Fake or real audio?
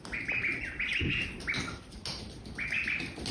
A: real